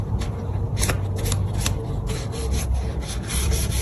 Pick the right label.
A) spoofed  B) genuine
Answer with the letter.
A